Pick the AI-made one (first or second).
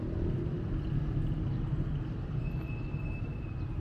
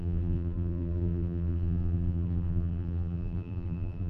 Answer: second